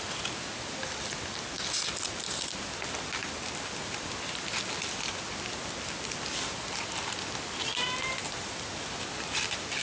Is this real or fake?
real